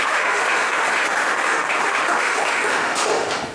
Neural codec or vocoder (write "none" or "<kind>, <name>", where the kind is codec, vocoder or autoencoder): autoencoder, DAC-VAE